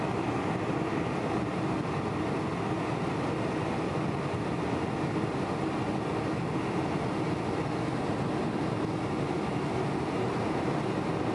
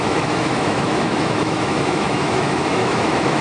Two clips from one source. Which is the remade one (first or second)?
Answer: second